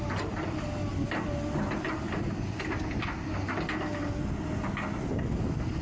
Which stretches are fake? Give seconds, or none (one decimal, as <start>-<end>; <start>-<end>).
none